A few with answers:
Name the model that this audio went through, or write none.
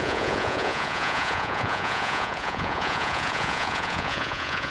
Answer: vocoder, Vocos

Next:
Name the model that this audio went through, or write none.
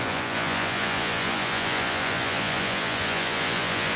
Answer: vocoder, Vocos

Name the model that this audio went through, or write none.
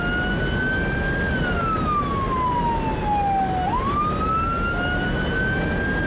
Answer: none